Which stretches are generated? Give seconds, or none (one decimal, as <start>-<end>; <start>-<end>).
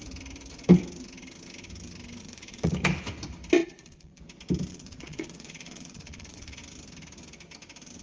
2.2-2.7; 3.6-4.2; 4.7-6.6